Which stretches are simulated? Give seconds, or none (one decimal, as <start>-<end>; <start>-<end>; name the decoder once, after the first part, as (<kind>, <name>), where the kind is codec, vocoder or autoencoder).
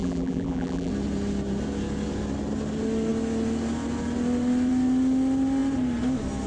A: 0.0-0.9 (vocoder, BigVGAN v2)